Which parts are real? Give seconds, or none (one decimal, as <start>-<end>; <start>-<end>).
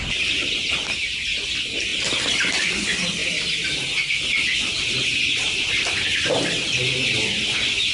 0.0-7.9